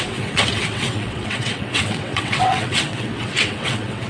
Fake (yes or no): yes